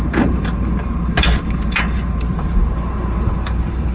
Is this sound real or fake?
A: fake